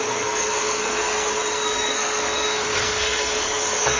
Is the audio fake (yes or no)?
yes